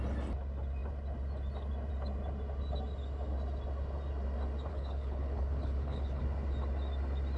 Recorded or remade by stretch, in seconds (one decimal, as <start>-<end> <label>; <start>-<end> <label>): 0.0-4.7 recorded; 4.7-6.2 remade; 6.2-7.4 recorded